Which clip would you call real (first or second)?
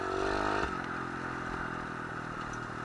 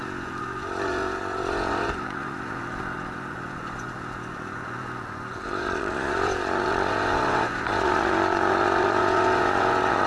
first